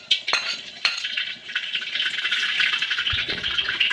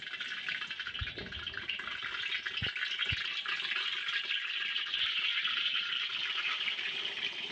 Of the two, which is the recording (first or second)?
second